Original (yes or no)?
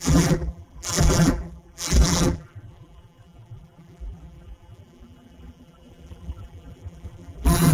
no